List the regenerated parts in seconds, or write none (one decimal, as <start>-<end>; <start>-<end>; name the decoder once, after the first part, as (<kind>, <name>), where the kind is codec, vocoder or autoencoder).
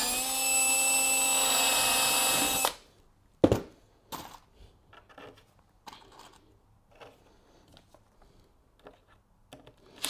none